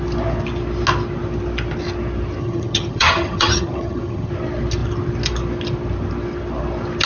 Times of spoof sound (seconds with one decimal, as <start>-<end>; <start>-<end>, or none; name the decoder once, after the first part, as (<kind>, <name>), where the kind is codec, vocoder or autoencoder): 2.4-4.3 (vocoder, HiFi-GAN)